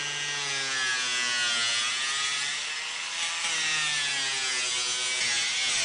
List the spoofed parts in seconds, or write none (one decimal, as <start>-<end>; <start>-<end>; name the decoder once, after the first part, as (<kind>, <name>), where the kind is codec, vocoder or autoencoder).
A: none